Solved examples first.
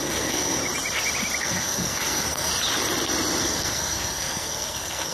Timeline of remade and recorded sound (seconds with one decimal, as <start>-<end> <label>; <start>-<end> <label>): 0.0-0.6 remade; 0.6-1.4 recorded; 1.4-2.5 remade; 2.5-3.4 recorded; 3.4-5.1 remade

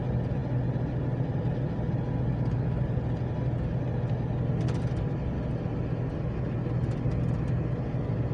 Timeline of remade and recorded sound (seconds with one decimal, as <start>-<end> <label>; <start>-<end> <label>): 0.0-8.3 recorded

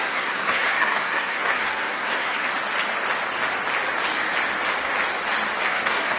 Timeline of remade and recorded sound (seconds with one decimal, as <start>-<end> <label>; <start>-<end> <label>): 0.0-2.5 remade; 2.5-5.7 recorded; 5.7-6.2 remade

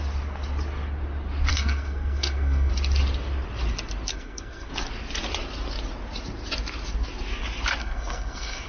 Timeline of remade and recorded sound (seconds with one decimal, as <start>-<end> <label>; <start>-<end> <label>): 0.0-1.5 recorded; 1.5-2.7 remade; 2.7-4.1 recorded; 4.1-4.7 remade; 4.7-7.8 recorded; 7.8-8.7 remade

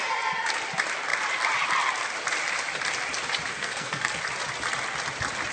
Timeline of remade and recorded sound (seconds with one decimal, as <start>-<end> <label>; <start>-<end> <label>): 0.0-3.5 recorded; 3.5-4.2 remade; 4.2-5.5 recorded

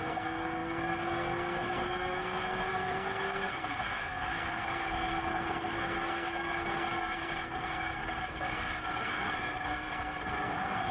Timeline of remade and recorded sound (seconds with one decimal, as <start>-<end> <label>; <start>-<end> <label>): 0.0-10.9 remade

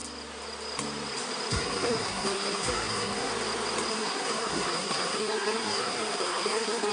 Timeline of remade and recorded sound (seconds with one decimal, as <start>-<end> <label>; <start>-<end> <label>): 0.0-1.5 recorded; 1.5-3.3 remade; 3.3-3.9 recorded; 3.9-6.9 remade

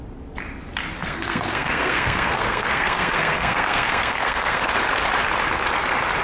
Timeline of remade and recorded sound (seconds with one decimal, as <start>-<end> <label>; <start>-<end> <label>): 0.0-1.0 recorded; 1.0-4.7 remade; 4.7-6.2 recorded